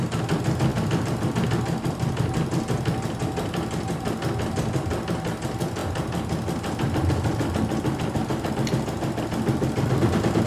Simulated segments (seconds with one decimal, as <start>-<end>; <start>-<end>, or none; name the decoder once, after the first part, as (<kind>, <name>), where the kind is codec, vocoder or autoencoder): 0.7-1.6 (vocoder, BigVGAN v2)

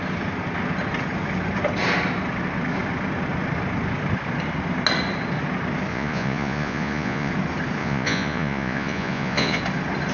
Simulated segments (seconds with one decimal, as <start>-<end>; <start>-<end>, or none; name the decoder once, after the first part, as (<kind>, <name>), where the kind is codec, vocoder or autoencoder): 5.9-7.3 (vocoder, Vocos); 7.8-9.6

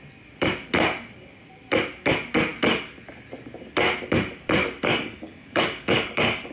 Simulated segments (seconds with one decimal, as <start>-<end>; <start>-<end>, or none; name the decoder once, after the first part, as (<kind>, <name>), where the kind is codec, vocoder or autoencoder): 4.9-6.5 (codec, DAC)

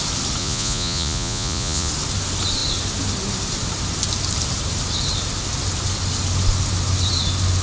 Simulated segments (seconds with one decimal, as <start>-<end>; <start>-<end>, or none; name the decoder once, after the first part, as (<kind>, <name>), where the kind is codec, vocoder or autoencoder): 0.4-1.9 (vocoder, Vocos)

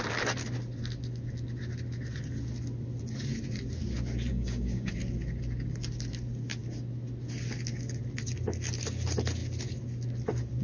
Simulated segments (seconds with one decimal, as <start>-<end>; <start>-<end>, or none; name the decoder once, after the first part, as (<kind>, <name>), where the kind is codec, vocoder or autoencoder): 4.3-4.9 (codec, DAC)

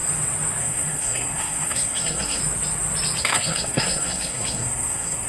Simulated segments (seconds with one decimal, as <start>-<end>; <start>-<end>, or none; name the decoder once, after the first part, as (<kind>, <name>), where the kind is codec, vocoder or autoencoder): 0.6-2.4 (codec, SNAC); 3.2-5.3

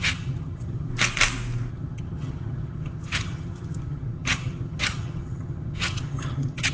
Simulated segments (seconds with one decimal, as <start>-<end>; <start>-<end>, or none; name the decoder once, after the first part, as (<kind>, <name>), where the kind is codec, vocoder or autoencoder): 0.0-0.9 (vocoder, HiFi-GAN); 1.7-6.7